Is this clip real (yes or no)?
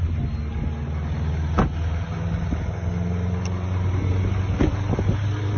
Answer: yes